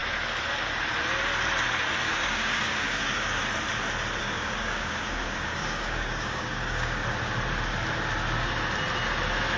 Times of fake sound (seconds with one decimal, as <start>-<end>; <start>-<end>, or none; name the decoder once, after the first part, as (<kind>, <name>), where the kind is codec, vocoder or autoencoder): 2.0-3.4 (codec, DAC); 4.2-7.0